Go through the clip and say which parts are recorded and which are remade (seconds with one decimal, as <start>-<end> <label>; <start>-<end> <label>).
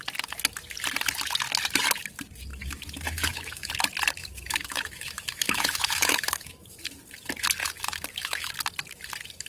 0.0-2.5 recorded; 2.5-3.7 remade; 3.7-4.2 recorded; 4.2-6.8 remade; 6.8-7.6 recorded; 7.6-8.5 remade; 8.5-9.5 recorded